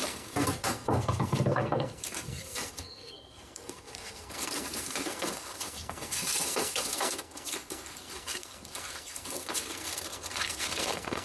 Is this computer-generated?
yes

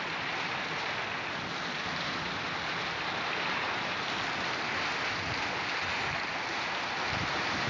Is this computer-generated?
no